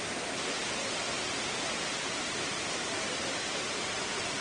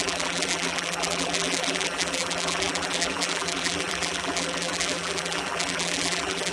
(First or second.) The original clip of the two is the first